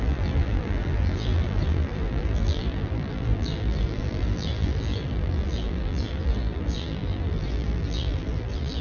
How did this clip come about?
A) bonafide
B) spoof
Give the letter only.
B